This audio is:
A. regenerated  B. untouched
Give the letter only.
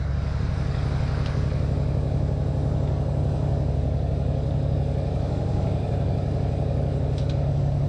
A